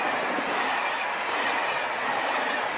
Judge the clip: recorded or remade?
recorded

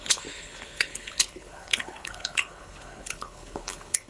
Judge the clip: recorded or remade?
remade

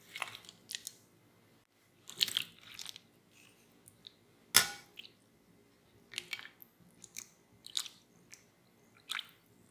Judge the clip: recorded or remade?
recorded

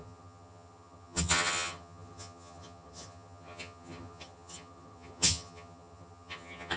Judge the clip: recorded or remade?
remade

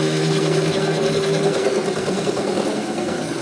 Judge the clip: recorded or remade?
remade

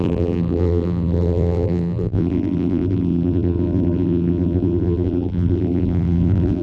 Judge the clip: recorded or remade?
remade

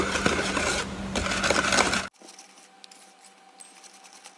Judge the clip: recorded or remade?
recorded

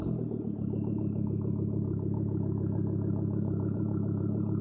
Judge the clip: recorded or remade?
remade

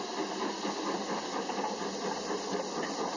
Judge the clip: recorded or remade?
recorded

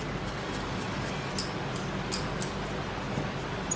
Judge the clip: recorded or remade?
recorded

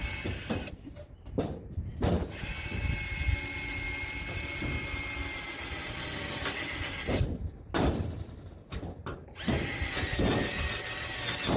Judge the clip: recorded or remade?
recorded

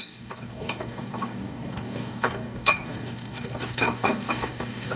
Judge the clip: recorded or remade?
remade